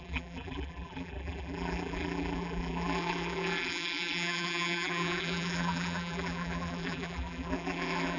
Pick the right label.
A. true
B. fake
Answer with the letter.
B